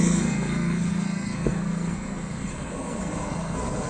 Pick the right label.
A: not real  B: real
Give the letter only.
A